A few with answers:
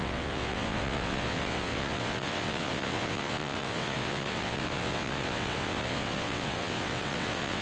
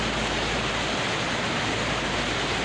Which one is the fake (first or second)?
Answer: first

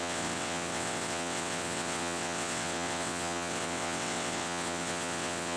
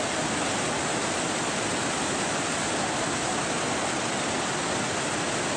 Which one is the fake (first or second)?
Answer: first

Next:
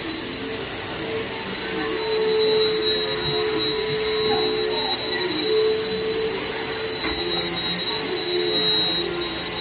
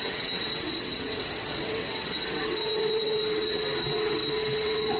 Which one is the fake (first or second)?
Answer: second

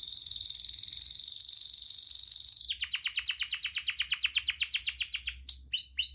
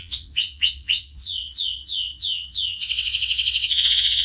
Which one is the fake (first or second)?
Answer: second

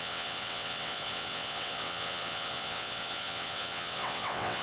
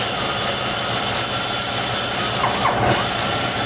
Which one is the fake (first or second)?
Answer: first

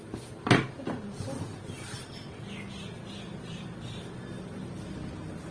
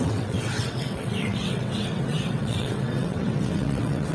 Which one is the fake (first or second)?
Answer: second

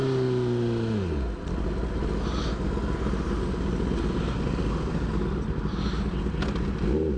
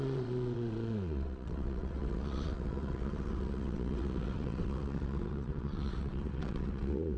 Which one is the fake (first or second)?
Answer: second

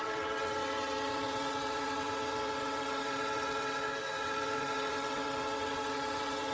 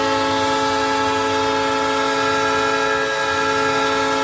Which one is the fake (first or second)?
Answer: first